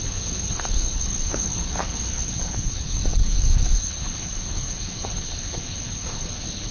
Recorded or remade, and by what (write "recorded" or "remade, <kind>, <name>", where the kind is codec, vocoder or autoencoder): remade, codec, HILCodec